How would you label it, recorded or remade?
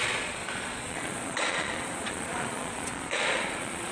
remade